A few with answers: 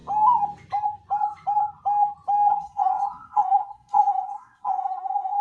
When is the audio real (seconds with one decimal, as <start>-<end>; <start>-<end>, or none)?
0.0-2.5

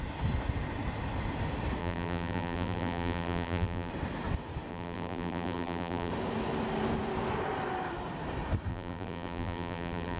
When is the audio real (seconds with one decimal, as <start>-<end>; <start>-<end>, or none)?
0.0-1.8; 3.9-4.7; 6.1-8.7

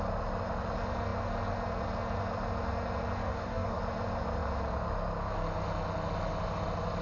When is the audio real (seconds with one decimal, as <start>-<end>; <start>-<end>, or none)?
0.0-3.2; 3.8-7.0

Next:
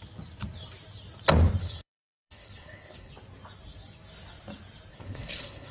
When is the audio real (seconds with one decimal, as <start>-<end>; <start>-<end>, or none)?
0.0-1.6; 3.1-4.9